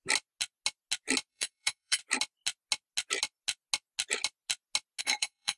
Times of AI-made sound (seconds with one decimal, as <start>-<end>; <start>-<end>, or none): 1.3-2.0; 5.0-5.6